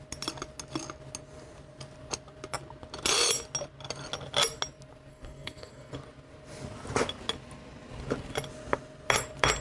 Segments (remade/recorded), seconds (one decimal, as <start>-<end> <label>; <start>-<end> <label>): 0.0-5.1 recorded; 5.1-5.9 remade; 5.9-9.6 recorded